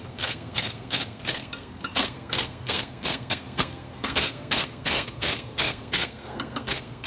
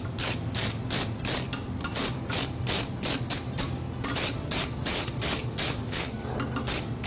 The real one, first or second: second